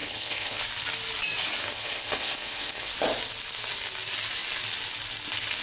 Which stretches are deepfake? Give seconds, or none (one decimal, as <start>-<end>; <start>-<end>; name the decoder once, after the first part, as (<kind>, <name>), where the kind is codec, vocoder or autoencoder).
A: 0.0-0.6 (codec, HILCodec); 1.6-2.9